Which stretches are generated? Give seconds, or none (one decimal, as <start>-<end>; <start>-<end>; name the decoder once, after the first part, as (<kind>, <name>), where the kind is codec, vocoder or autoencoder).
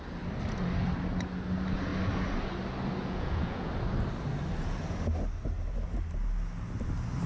3.0-3.7 (vocoder, Vocos)